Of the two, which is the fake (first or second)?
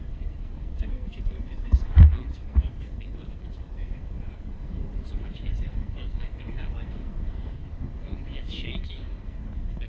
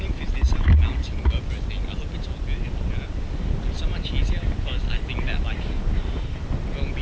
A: first